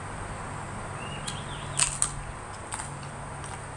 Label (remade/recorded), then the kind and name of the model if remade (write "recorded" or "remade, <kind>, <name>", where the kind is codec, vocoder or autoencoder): recorded